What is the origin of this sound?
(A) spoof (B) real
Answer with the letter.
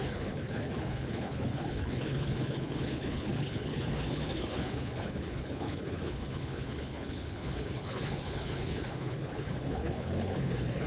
A